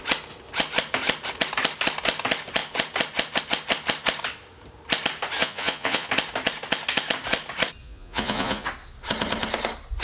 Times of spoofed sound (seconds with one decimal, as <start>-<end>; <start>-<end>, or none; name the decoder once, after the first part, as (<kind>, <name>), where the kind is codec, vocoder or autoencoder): 5.4-6.1 (vocoder, Vocos); 7.8-8.7